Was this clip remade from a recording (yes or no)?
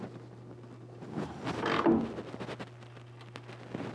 no